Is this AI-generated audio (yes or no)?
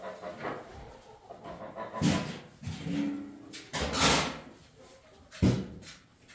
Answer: no